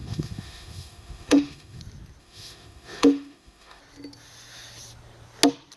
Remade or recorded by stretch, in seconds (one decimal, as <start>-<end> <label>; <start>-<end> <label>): 0.0-1.8 remade; 1.8-2.2 recorded; 2.2-3.8 remade; 3.8-5.8 recorded